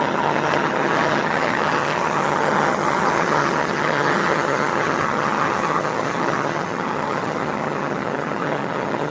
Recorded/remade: remade